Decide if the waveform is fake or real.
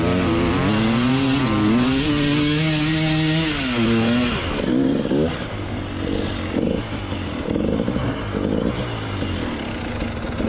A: real